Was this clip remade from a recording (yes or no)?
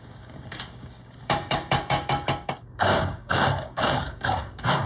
yes